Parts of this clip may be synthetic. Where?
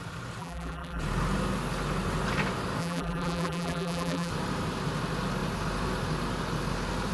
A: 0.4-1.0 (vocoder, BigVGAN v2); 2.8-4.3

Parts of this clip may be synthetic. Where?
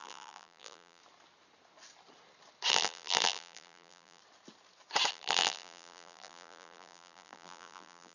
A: 0.0-1.0 (vocoder, BigVGAN v2); 2.7-4.2; 5.1-8.1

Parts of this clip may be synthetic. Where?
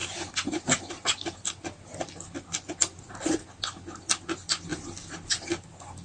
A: 0.0-3.6 (vocoder, BigVGAN v2)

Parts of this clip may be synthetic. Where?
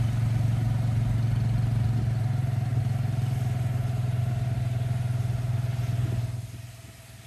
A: none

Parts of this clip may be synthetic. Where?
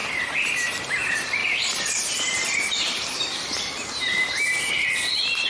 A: 1.4-4.7 (vocoder, BigVGAN v2)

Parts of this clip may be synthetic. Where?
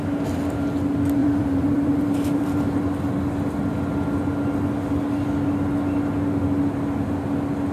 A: 1.2-2.8 (vocoder, BigVGAN v2)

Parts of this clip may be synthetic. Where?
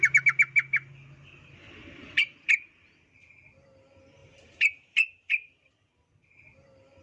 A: 2.0-2.9 (vocoder, BigVGAN v2); 4.2-5.7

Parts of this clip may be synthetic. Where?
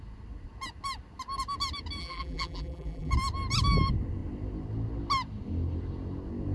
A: 2.0-3.1 (vocoder, BigVGAN v2)